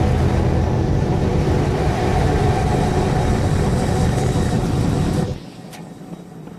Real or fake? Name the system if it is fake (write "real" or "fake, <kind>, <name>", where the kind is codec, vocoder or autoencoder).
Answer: fake, vocoder, BigVGAN v2